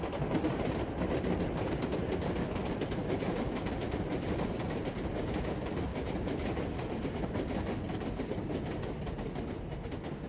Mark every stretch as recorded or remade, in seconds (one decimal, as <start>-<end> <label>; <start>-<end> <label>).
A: 0.0-10.3 recorded